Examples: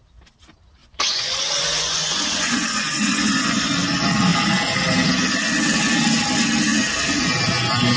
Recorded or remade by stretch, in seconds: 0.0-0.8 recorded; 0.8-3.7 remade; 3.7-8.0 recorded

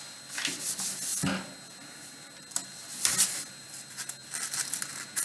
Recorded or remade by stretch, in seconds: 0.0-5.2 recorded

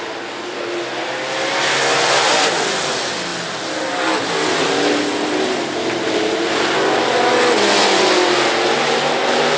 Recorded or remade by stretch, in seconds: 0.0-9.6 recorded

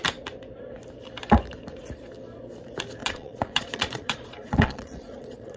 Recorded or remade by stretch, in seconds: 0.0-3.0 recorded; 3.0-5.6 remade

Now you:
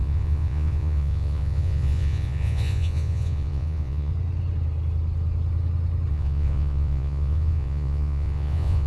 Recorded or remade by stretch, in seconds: 0.0-4.1 remade; 4.1-6.1 recorded; 6.1-8.9 remade